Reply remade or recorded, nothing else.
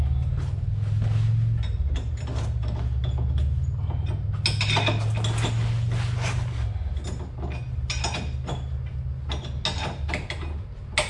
recorded